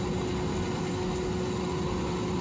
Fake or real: real